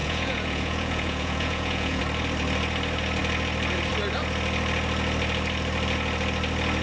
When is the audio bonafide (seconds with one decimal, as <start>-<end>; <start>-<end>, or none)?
2.0-6.8